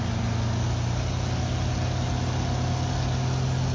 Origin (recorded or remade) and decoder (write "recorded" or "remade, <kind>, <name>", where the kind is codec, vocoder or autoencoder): recorded